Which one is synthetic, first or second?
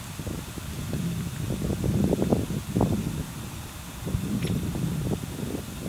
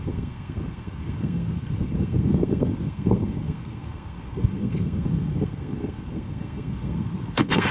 second